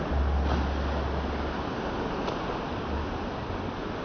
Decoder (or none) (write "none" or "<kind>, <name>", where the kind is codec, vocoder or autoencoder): none